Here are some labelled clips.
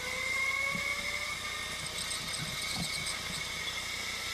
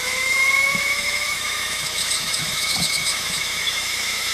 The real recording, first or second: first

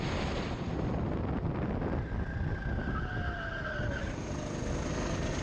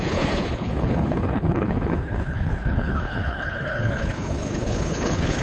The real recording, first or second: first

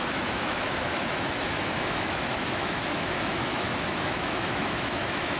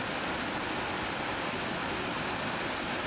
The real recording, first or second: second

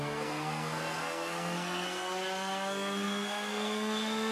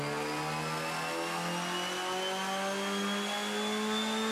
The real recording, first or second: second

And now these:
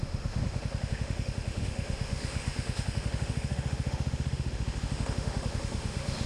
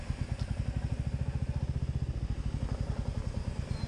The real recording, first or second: second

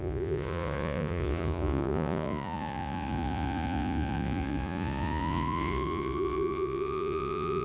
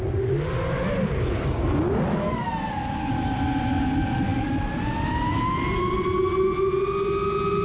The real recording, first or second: second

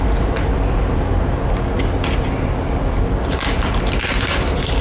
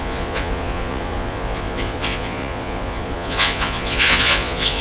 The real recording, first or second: first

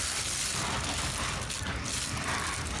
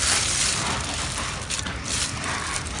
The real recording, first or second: first